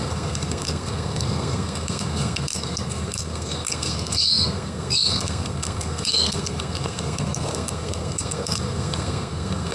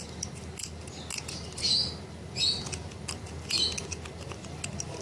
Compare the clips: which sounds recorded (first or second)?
second